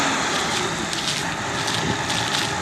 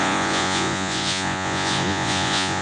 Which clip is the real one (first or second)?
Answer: first